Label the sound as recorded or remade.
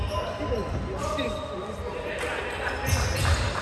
recorded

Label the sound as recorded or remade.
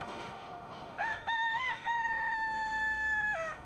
remade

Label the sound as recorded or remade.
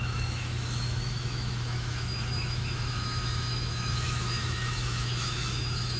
remade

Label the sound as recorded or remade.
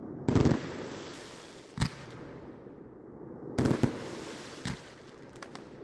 recorded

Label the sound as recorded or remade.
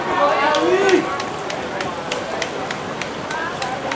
recorded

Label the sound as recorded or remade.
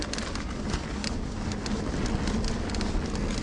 recorded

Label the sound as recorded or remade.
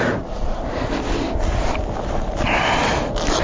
recorded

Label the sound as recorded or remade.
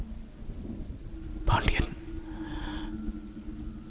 recorded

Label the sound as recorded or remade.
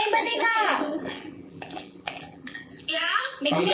remade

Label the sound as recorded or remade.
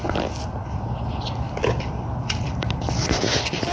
recorded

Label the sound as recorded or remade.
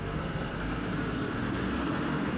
remade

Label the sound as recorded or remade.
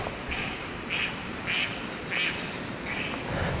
recorded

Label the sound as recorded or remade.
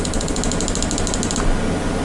recorded